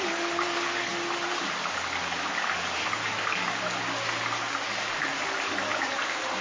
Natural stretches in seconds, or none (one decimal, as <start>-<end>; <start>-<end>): 0.0-6.4

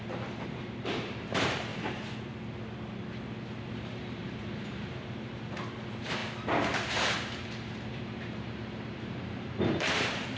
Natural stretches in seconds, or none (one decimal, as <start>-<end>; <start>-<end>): 1.7-3.8; 6.2-6.9

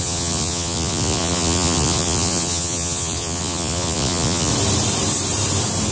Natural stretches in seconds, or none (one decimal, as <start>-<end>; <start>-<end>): 4.5-5.9

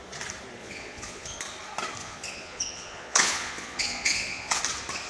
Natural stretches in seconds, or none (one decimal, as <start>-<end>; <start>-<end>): 0.0-0.6; 1.4-2.0; 4.6-5.1

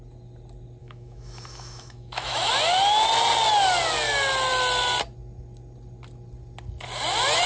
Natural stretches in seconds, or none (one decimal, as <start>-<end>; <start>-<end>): 0.0-0.8; 2.5-7.5

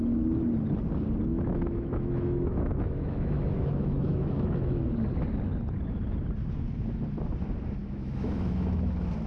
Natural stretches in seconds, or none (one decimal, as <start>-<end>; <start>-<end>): 0.0-1.3; 4.8-7.8; 8.9-9.3